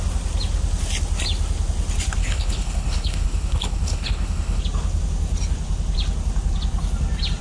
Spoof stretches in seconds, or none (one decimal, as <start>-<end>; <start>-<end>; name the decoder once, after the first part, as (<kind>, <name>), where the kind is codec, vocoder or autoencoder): 2.2-4.6 (codec, HILCodec)